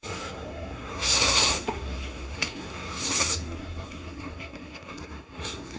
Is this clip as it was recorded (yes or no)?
no